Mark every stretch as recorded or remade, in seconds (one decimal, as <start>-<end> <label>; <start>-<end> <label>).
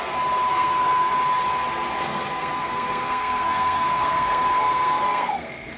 0.0-0.5 recorded; 0.5-1.1 remade; 1.1-2.0 recorded; 2.0-5.8 remade